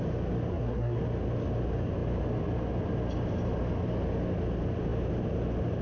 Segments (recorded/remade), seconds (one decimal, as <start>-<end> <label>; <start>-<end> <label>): 0.0-0.5 recorded; 0.5-1.0 remade; 1.0-5.8 recorded